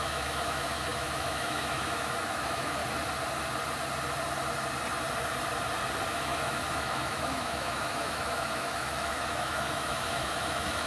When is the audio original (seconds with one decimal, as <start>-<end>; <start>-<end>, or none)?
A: 2.8-6.1